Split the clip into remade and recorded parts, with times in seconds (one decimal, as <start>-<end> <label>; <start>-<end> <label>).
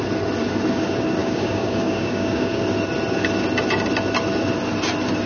0.0-1.2 recorded; 1.2-2.6 remade; 2.6-5.3 recorded